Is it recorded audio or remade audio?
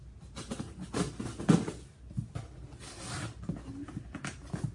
recorded